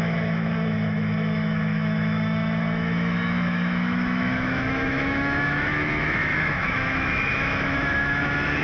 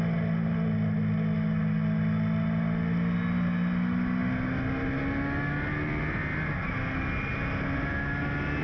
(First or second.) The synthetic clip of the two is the first